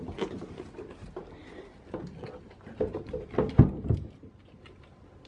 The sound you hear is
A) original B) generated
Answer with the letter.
A